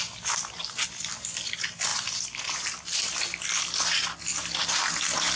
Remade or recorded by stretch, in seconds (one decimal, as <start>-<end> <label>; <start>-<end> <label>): 0.0-5.4 recorded